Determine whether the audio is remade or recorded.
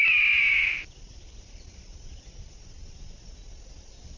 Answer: recorded